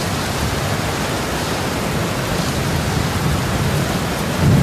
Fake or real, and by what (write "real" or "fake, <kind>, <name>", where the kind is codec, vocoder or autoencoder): real